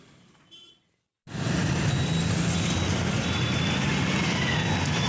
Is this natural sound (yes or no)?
yes